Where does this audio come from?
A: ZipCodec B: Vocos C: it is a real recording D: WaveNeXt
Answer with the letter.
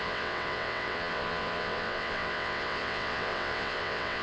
D